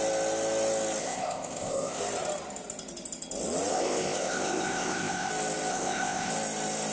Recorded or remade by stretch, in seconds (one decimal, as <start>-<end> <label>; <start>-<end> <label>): 0.0-1.0 recorded; 1.0-2.0 remade; 2.0-3.7 recorded; 3.7-5.3 remade; 5.3-5.7 recorded; 5.7-6.3 remade; 6.3-6.9 recorded